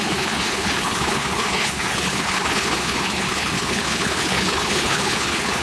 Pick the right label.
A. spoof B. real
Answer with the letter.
A